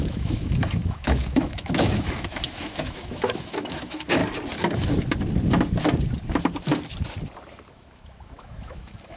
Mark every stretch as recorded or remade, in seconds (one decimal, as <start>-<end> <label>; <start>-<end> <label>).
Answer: 0.0-4.2 remade; 4.2-7.7 recorded; 7.7-9.2 remade